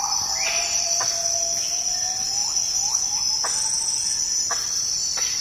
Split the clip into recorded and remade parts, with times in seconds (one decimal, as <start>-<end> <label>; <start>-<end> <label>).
0.0-5.4 recorded